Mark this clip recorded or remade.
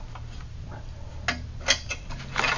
recorded